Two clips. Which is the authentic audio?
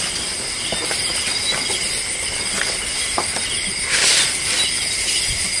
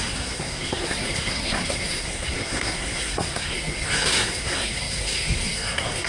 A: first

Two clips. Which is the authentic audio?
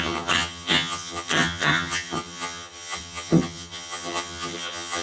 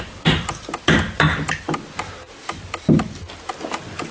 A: second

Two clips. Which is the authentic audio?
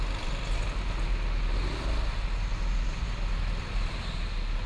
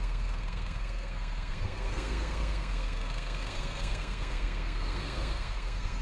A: first